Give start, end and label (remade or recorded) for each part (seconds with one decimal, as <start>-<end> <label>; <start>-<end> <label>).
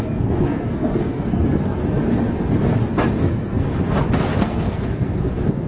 0.0-1.8 remade; 1.8-3.2 recorded; 3.2-3.7 remade; 3.7-4.4 recorded; 4.4-5.7 remade